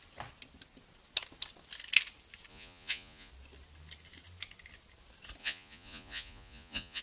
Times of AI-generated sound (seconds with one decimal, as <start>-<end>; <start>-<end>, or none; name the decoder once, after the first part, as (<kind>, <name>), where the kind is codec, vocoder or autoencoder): 2.5-3.3 (vocoder, Vocos); 5.4-7.0